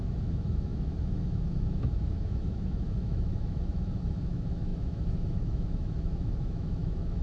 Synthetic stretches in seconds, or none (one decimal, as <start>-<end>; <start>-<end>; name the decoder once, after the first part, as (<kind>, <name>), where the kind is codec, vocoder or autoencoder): 0.0-7.2 (autoencoder, DAC-VAE)